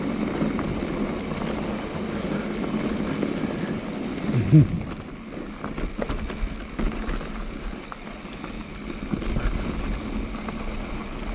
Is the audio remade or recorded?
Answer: recorded